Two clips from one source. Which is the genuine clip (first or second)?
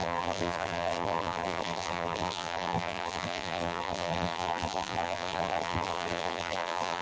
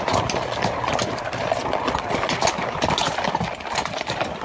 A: second